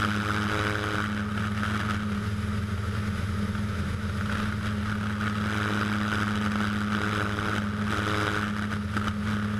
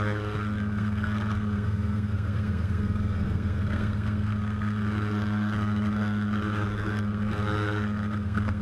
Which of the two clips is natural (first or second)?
first